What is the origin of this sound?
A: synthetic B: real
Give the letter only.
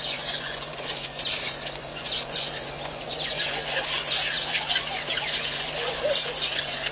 A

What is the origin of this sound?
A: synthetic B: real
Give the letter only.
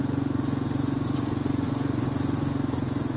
A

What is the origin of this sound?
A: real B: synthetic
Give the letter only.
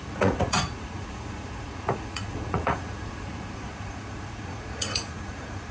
B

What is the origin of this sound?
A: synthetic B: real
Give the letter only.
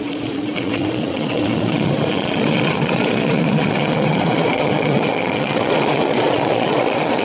A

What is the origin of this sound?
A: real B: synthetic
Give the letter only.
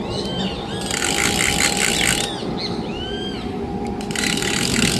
A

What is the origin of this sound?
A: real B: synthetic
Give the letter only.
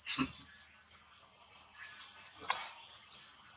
A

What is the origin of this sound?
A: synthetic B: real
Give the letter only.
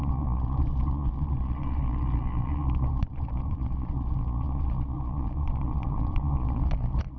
A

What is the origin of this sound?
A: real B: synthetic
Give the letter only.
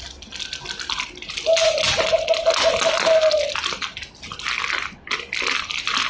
A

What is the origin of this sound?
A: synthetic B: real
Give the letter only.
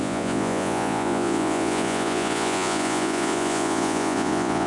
A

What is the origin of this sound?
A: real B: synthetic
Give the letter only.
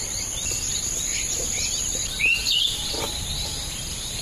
A